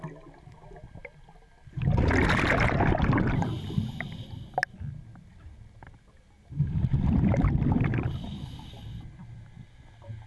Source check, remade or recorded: recorded